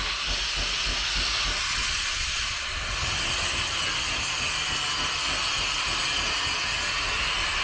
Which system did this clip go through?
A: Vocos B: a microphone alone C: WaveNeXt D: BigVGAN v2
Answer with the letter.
B